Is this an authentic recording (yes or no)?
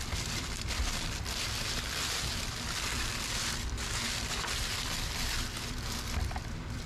no